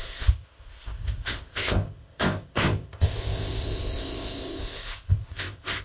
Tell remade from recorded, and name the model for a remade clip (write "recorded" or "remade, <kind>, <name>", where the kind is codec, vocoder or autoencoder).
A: remade, codec, ZipCodec